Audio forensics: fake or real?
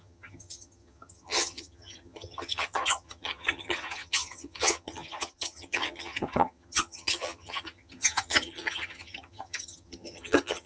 fake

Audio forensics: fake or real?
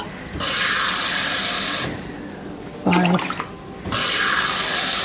real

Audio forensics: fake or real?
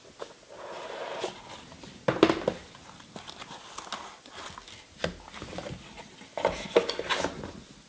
real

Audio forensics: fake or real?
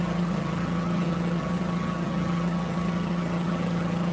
fake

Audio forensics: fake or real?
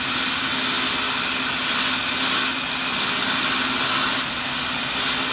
real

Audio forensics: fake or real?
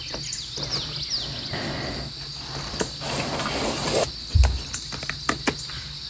real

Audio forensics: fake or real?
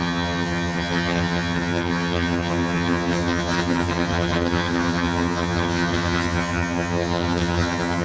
fake